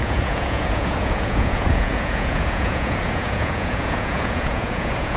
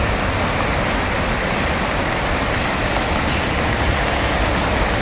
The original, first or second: second